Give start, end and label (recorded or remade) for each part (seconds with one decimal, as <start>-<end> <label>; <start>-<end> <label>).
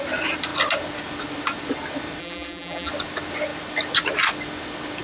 0.0-2.2 recorded; 2.2-2.9 remade; 2.9-5.0 recorded